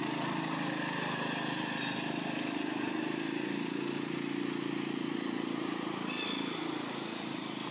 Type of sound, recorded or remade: recorded